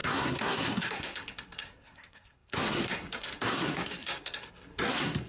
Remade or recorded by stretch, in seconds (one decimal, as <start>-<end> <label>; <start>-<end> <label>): 0.0-5.3 remade